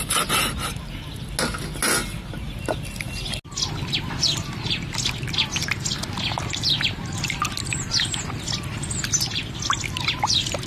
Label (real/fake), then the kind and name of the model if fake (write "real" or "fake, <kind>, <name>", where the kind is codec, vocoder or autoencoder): real